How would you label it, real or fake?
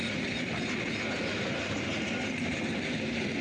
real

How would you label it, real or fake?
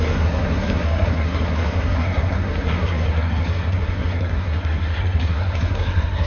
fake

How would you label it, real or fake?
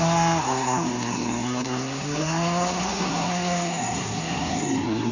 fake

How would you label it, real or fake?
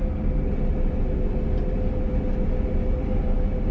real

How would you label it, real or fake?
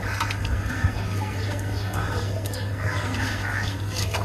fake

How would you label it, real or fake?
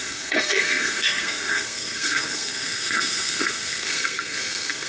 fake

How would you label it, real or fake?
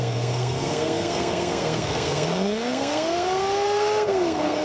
fake